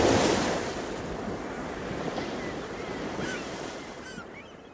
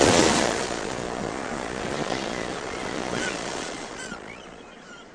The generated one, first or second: second